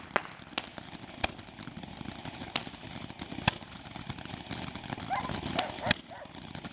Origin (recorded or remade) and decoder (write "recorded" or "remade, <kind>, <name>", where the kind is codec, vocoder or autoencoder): recorded